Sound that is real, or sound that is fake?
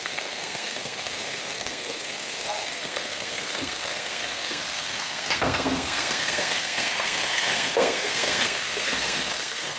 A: fake